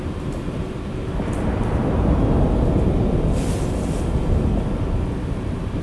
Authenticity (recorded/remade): recorded